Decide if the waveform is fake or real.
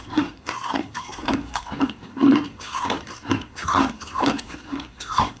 fake